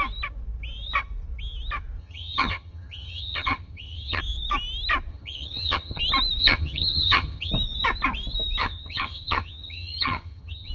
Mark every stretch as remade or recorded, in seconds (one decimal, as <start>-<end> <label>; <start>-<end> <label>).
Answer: 0.0-2.0 recorded; 2.0-4.2 remade; 4.2-5.1 recorded; 5.1-6.0 remade; 6.0-6.4 recorded; 6.4-7.5 remade; 7.5-8.6 recorded; 8.6-10.7 remade